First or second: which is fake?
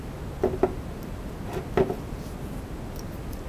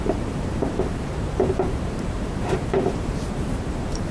second